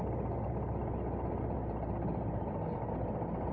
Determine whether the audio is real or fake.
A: real